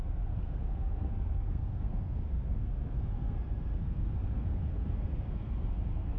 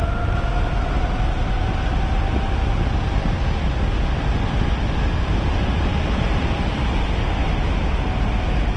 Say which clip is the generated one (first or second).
first